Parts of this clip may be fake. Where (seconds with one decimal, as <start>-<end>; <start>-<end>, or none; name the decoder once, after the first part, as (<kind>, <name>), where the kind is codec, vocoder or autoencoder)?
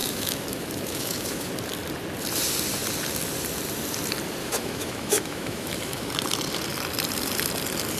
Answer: 0.0-1.5 (autoencoder, DAC-VAE); 4.4-6.1